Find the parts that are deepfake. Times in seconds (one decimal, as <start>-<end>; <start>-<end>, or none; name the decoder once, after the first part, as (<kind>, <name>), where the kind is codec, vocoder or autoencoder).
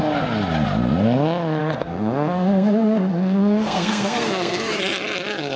1.6-4.8 (codec, SNAC)